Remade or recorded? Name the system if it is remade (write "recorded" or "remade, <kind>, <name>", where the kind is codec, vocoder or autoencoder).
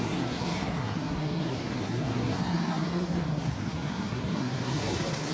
remade, codec, SNAC